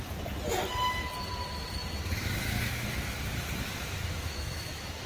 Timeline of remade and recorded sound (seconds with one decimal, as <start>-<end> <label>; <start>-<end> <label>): 0.0-1.8 recorded; 1.8-5.1 remade